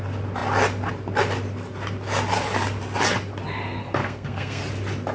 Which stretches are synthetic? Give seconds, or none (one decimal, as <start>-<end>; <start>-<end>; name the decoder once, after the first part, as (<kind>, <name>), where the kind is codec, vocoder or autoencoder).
3.8-4.6 (codec, SNAC)